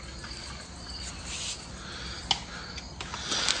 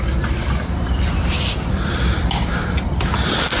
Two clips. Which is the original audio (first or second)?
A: first